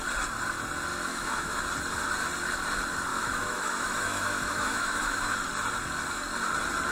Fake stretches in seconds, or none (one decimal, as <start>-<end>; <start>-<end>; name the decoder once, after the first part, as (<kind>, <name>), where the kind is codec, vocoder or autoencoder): 0.9-1.6 (autoencoder, DAC-VAE); 3.1-5.3